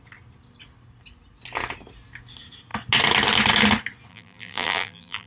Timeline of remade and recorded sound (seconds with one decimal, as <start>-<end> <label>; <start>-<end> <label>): 0.0-4.1 recorded; 4.1-5.3 remade